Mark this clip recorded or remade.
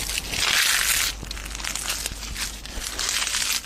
recorded